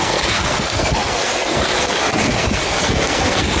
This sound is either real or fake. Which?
fake